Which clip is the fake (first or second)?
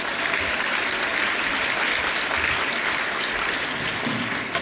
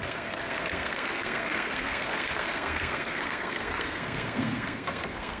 second